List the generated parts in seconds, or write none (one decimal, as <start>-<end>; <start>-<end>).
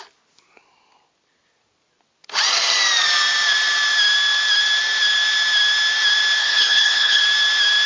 6.4-7.2